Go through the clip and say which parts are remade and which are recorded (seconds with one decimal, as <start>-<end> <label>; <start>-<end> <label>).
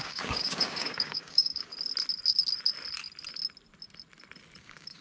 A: 0.0-1.7 remade; 1.7-4.6 recorded; 4.6-5.0 remade